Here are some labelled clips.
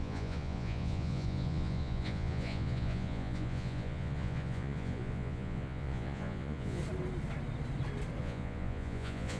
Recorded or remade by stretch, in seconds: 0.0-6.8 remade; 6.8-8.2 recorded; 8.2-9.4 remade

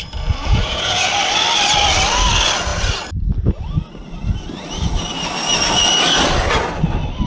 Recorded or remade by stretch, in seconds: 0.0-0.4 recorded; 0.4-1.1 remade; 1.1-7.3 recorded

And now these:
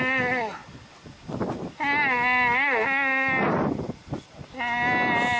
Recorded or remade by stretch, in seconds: 0.0-5.4 recorded